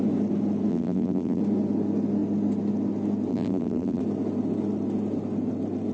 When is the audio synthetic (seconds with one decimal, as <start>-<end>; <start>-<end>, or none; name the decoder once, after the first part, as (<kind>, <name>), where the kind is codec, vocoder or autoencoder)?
0.7-1.4 (vocoder, BigVGAN v2); 3.3-4.0